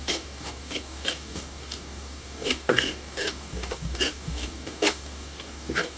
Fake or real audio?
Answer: fake